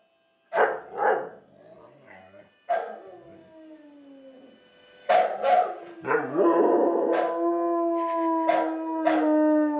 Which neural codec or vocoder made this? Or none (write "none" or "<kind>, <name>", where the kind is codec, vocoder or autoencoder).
none